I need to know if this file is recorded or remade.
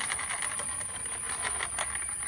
remade